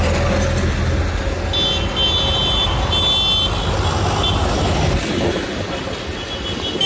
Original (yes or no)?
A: yes